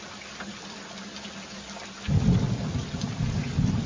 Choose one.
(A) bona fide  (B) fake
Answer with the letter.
A